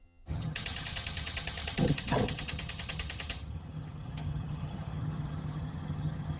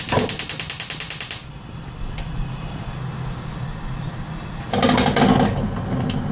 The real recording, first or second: second